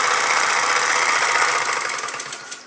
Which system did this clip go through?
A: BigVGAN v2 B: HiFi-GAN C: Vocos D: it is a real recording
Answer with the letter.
D